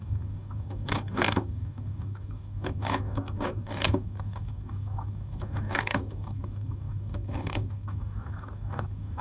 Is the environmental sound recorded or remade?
remade